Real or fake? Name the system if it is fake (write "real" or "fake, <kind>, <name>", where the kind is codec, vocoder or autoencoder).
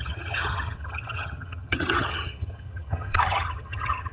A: fake, vocoder, HiFi-GAN